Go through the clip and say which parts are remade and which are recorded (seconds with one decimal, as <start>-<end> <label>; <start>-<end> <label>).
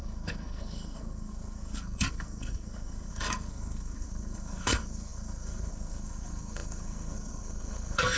0.0-8.2 remade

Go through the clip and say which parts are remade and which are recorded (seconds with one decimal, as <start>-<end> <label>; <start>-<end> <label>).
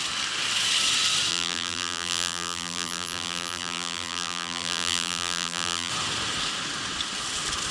0.0-1.3 recorded; 1.3-5.9 remade; 5.9-7.7 recorded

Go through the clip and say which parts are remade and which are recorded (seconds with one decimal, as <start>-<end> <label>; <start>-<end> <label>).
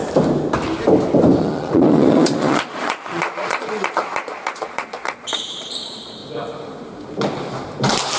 0.0-1.4 recorded; 1.4-6.2 remade; 6.2-8.2 recorded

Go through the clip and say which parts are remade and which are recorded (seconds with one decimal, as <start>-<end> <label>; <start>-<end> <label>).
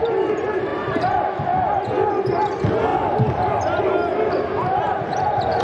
0.0-5.6 recorded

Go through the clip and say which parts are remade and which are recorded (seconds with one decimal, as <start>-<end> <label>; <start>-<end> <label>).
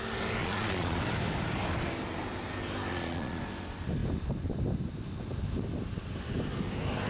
0.0-0.4 recorded; 0.4-1.0 remade; 1.0-2.9 recorded; 2.9-3.4 remade; 3.4-7.1 recorded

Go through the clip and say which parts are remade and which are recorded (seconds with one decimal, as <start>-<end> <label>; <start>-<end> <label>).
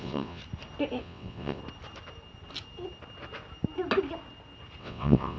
0.0-0.4 remade; 0.4-1.0 recorded; 1.0-1.6 remade; 1.6-4.8 recorded; 4.8-5.4 remade